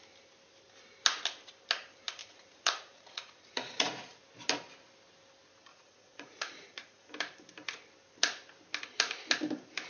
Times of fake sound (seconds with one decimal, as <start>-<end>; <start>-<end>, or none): 2.2-4.2; 5.7-7.1